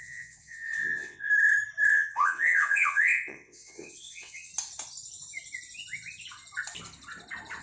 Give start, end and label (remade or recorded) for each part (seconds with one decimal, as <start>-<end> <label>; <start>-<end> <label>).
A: 0.0-1.3 remade; 1.3-1.9 recorded; 1.9-4.5 remade; 4.5-7.6 recorded